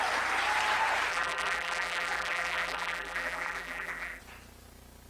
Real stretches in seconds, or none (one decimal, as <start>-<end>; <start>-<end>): 0.0-1.1; 4.2-5.1